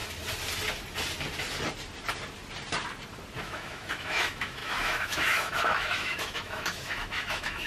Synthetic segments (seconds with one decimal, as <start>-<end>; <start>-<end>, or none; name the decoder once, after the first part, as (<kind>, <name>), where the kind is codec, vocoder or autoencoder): 3.4-7.7 (autoencoder, DAC-VAE)